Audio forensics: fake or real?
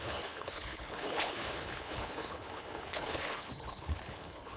fake